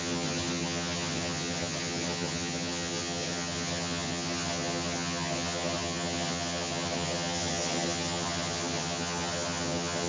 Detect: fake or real fake